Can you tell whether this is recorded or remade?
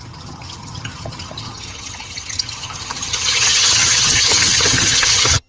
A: remade